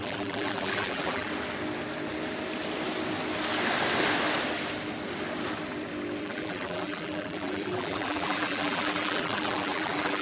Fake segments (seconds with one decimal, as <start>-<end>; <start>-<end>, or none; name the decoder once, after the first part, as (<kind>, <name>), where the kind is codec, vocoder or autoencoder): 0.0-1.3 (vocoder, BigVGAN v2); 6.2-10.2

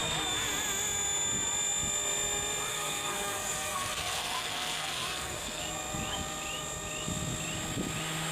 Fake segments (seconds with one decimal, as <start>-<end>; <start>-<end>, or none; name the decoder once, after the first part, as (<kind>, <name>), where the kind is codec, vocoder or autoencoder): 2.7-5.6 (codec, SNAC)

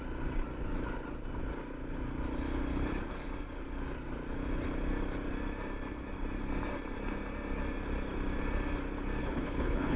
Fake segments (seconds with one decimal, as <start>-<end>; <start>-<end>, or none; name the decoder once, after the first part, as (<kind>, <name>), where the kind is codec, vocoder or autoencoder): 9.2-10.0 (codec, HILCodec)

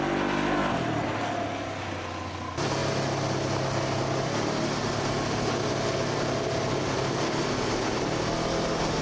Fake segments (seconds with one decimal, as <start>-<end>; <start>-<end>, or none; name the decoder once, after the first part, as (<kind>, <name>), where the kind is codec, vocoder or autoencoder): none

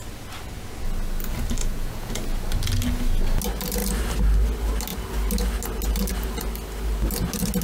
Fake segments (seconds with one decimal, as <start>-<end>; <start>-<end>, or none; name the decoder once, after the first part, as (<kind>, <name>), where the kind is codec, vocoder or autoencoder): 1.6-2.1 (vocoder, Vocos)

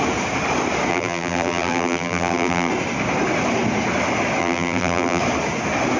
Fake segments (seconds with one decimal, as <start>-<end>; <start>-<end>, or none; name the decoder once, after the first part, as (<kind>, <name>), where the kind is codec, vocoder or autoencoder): 0.9-2.7 (vocoder, BigVGAN v2); 4.4-5.2